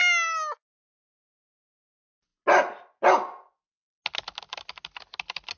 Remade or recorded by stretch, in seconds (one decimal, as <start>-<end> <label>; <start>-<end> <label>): 0.0-5.6 recorded